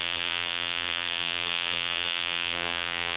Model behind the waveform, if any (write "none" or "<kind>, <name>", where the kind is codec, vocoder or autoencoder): vocoder, BigVGAN v2